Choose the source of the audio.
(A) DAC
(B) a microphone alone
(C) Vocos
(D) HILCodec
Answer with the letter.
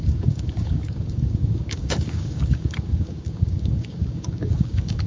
A